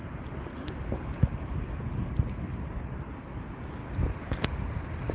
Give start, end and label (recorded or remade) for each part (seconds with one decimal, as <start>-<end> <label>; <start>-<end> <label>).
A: 0.0-5.1 recorded